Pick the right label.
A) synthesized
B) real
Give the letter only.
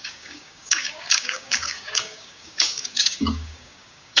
A